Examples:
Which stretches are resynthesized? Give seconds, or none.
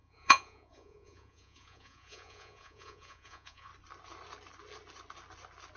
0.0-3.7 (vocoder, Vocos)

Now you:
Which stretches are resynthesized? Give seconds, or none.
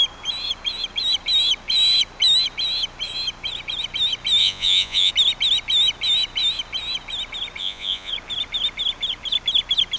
4.4-5.1 (vocoder, Vocos); 7.6-8.1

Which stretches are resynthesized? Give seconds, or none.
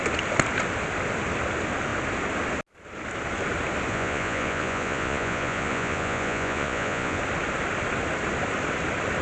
3.9-7.2 (vocoder, Vocos)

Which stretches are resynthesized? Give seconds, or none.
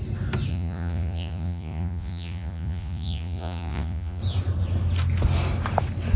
0.5-4.2 (vocoder, Vocos)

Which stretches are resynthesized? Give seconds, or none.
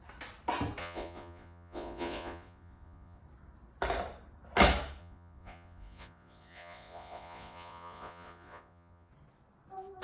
0.8-3.2 (vocoder, Vocos); 5.0-9.1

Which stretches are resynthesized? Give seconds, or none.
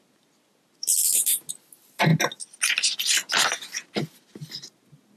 none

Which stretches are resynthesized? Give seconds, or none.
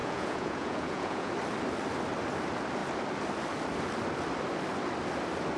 0.0-1.3 (vocoder, Vocos)